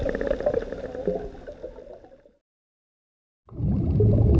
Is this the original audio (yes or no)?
yes